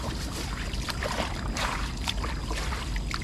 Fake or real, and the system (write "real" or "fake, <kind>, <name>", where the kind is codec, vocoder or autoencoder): real